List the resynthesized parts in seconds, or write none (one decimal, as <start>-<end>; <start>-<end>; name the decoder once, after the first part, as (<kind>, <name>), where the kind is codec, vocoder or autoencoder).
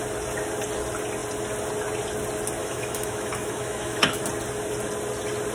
2.6-4.2 (autoencoder, DAC-VAE)